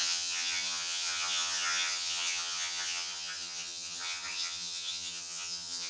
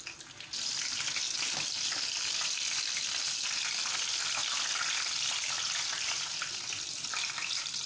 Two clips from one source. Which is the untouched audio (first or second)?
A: second